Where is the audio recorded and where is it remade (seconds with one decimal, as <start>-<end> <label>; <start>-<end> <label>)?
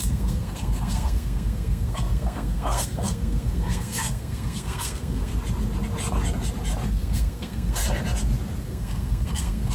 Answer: 0.0-5.3 remade; 5.3-6.9 recorded; 6.9-7.8 remade; 7.8-8.6 recorded; 8.6-9.7 remade